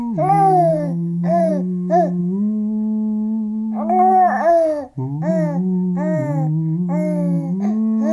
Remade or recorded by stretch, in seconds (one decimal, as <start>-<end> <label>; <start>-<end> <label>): 0.0-0.7 recorded; 0.7-1.5 remade; 1.5-8.1 recorded